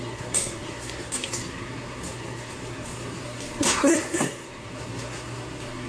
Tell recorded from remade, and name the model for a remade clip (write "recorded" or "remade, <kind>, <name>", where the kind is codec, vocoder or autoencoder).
remade, codec, SNAC